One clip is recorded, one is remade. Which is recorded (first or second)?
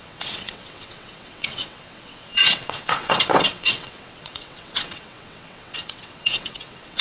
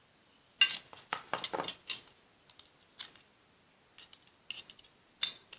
second